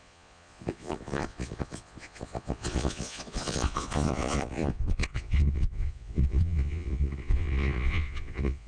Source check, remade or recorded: remade